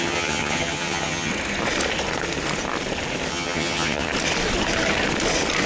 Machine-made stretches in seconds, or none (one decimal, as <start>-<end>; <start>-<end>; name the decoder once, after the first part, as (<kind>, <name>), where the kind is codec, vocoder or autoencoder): 0.0-1.3 (vocoder, HiFi-GAN); 3.3-4.1